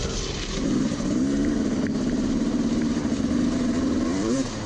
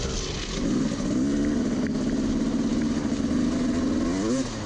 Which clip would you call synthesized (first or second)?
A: first